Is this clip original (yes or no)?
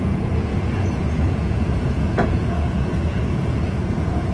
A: no